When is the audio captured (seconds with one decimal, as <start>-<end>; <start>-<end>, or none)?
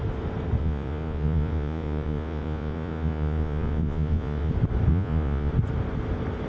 0.0-0.6; 4.5-4.9; 5.5-6.5